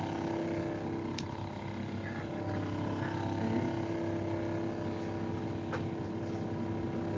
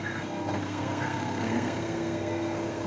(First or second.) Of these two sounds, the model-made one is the second